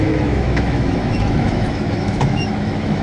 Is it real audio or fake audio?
fake